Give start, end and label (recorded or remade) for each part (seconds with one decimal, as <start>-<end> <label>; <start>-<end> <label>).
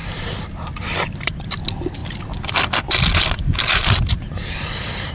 0.0-2.0 remade; 2.0-4.2 recorded; 4.2-5.1 remade